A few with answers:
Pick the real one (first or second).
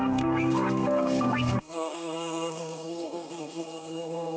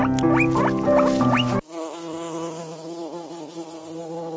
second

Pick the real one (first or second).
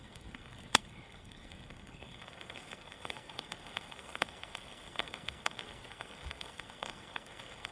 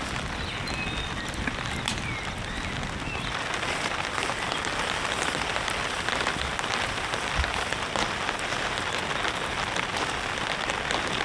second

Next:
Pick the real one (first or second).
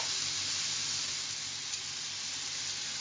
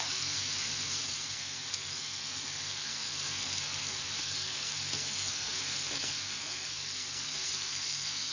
first